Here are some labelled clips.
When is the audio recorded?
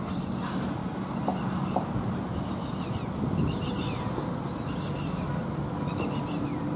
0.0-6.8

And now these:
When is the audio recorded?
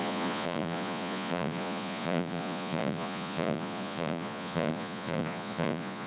none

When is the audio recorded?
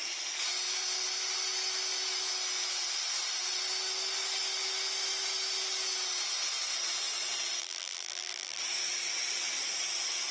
0.0-7.6; 8.6-10.3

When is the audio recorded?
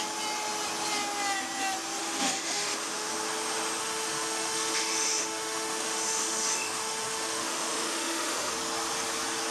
0.0-2.0; 3.1-3.8; 8.5-9.5